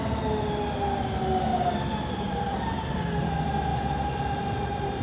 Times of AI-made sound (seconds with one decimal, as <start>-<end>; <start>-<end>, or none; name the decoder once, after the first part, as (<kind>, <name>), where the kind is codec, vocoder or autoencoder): 1.5-3.0 (vocoder, BigVGAN v2); 3.7-5.0